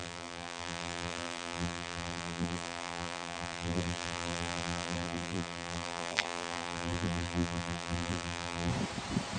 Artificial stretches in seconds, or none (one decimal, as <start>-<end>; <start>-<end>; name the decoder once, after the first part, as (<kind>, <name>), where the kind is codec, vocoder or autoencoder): 0.0-8.7 (vocoder, BigVGAN v2)